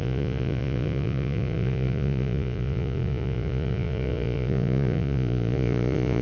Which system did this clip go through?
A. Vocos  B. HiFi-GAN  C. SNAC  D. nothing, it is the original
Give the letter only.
A